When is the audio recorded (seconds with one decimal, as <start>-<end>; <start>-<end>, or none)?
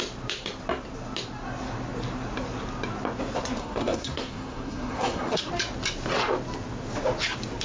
0.0-3.6; 5.5-7.6